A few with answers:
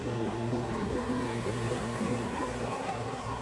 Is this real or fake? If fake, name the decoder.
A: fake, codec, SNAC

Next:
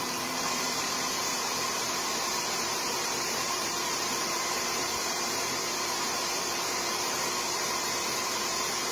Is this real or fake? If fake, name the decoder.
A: fake, vocoder, BigVGAN v2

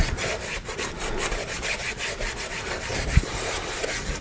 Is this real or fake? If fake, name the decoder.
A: real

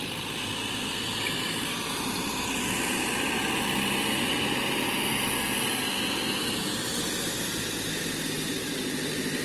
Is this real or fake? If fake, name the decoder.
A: real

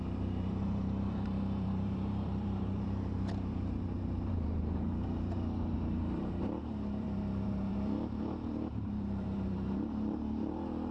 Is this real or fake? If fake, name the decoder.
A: fake, vocoder, BigVGAN v2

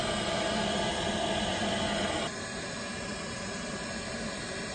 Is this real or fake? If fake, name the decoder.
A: real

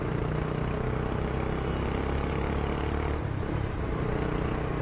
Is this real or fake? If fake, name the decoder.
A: real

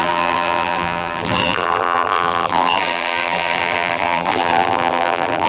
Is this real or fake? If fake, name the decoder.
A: fake, vocoder, BigVGAN v2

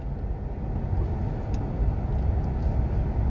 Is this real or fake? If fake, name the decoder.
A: real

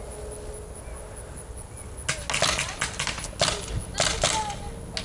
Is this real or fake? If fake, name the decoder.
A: real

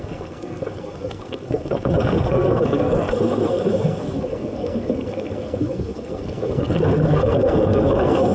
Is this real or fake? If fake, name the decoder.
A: fake, codec, SNAC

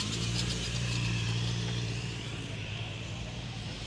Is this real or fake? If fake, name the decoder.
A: fake, vocoder, BigVGAN v2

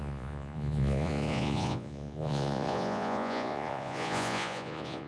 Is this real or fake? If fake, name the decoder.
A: fake, vocoder, Vocos